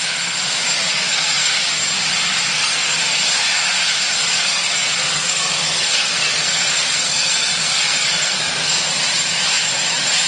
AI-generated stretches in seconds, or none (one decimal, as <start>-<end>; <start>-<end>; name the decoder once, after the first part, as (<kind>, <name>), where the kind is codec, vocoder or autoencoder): 0.9-1.5 (codec, SNAC); 2.5-3.0; 4.3-8.8